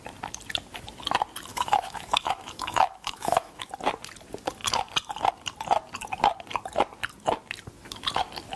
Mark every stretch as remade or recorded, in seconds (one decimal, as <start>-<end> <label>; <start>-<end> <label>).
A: 0.0-1.5 recorded; 1.5-3.7 remade; 3.7-8.6 recorded